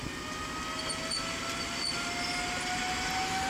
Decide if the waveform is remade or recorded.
recorded